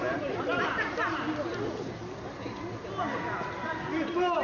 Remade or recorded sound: remade